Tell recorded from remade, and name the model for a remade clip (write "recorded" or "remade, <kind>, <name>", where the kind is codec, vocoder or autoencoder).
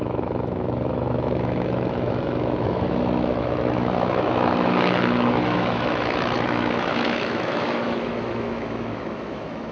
remade, autoencoder, DAC-VAE